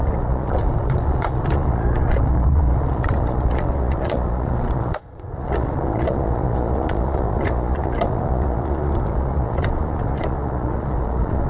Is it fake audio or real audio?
fake